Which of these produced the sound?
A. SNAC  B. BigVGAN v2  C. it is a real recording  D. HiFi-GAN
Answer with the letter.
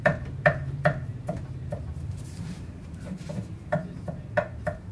B